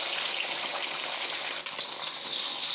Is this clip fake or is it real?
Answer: real